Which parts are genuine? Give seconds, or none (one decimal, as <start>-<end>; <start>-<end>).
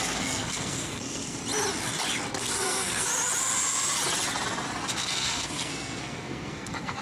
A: 1.4-2.4; 3.1-4.9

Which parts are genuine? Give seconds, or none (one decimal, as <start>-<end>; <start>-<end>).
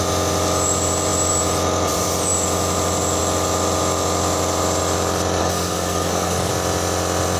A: 0.0-5.4; 6.5-7.4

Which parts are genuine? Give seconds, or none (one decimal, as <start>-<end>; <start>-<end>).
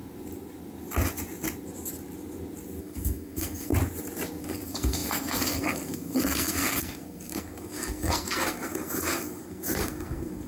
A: 0.0-2.8; 3.7-4.4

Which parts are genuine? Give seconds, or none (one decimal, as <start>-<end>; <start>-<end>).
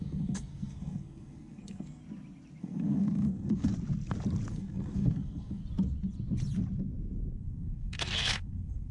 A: 2.0-2.6; 3.7-4.5; 5.6-7.4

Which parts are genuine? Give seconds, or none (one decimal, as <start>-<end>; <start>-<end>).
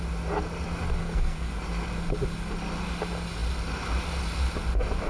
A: 0.0-1.0; 1.5-5.1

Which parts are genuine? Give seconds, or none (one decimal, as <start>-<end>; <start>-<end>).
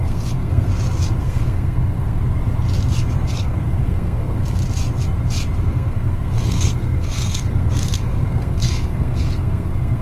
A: 0.7-1.2; 2.2-3.3; 4.6-5.6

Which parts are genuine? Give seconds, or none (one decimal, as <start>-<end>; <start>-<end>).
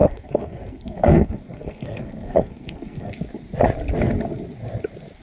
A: 3.1-5.2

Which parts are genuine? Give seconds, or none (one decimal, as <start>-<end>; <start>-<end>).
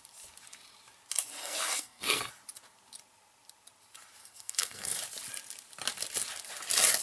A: 0.0-1.4; 2.3-4.2; 5.0-7.0